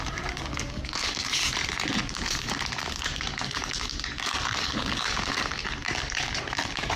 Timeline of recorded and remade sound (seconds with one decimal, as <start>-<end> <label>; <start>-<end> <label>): 0.0-1.4 remade; 1.4-2.0 recorded; 2.0-7.0 remade